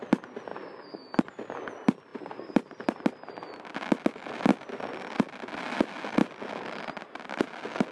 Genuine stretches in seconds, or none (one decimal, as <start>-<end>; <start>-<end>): 0.0-7.9